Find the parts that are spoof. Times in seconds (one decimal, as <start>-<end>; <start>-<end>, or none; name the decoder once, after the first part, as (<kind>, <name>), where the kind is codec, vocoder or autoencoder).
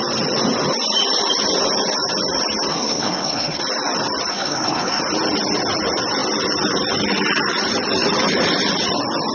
2.7-3.6 (codec, SNAC); 4.3-5.0